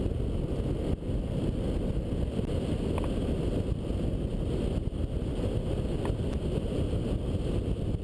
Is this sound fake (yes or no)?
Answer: no